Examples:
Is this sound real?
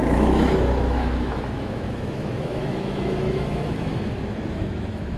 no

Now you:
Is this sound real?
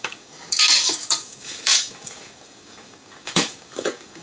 no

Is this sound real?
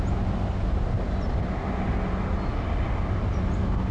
yes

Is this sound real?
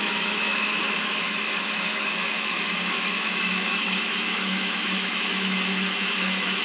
no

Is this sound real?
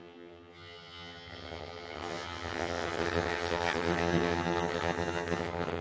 no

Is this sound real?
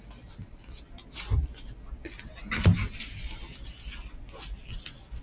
yes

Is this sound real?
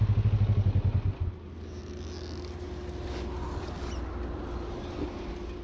yes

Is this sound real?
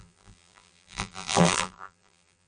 no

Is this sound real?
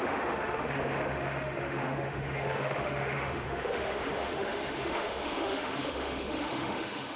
no